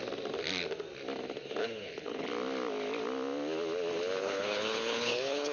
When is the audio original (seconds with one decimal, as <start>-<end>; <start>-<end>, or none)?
0.0-1.6; 2.3-4.2